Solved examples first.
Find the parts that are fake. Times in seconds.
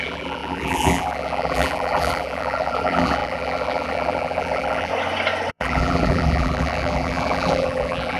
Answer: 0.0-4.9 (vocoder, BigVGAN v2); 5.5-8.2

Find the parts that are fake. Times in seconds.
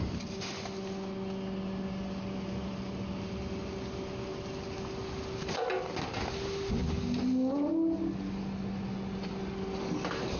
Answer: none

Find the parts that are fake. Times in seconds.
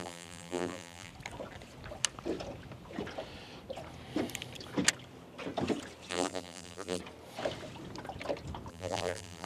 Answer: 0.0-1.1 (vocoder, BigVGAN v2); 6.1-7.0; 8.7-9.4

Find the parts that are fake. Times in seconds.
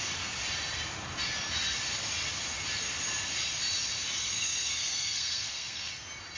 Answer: 4.2-5.9 (codec, SNAC)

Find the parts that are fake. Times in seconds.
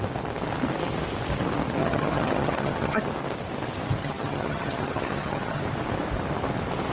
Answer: 1.8-3.0 (vocoder, HiFi-GAN); 4.0-5.6